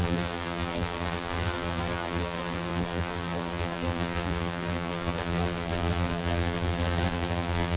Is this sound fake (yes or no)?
yes